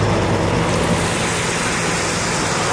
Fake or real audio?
real